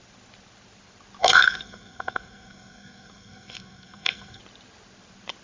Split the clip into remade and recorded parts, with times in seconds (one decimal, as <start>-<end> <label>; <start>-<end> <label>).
0.0-1.2 recorded; 1.2-4.4 remade; 4.4-5.4 recorded

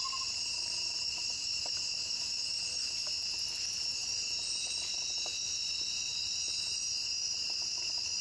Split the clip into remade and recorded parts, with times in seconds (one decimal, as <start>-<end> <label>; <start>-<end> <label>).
0.0-4.0 recorded; 4.0-4.7 remade; 4.7-8.2 recorded

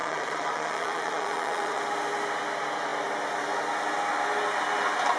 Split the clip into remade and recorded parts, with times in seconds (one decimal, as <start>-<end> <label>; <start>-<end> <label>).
0.0-1.8 remade; 1.8-5.2 recorded

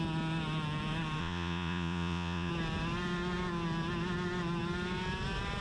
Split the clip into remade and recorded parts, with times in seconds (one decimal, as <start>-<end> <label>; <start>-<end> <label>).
0.0-1.2 recorded; 1.2-2.5 remade; 2.5-5.6 recorded

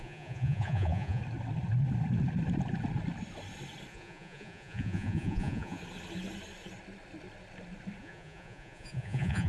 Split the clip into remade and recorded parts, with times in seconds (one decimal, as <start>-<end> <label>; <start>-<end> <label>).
0.0-1.2 remade; 1.2-3.9 recorded; 3.9-5.8 remade; 5.8-8.0 recorded; 8.0-9.5 remade

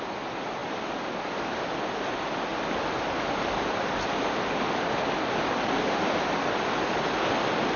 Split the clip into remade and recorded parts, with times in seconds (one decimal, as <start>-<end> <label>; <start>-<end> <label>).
0.0-7.8 recorded

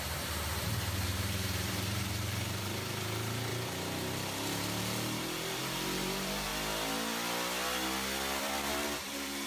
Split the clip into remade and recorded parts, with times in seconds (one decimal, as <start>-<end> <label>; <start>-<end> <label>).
0.0-6.5 remade; 6.5-8.4 recorded; 8.4-9.5 remade